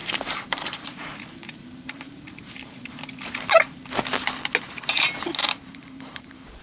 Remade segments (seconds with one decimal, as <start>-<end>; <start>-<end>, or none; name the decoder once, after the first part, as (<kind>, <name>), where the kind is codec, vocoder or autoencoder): 0.0-3.8 (vocoder, BigVGAN v2); 5.4-6.6